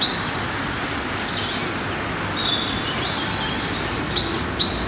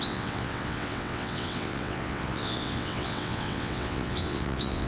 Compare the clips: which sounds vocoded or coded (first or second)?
second